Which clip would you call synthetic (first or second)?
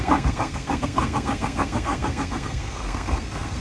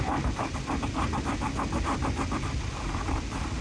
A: first